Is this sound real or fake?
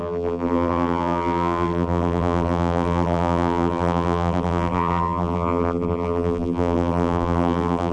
fake